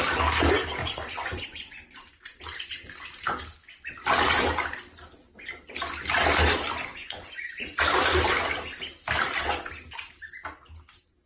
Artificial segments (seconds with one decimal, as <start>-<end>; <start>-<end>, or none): 0.8-2.4; 7.0-7.7